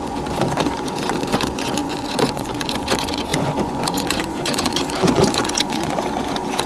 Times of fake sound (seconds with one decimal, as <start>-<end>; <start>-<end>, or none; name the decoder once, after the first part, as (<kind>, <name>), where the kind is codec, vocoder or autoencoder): 0.0-6.7 (vocoder, Vocos)